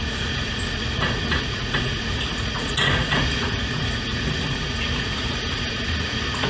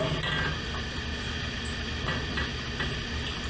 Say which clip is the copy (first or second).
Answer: first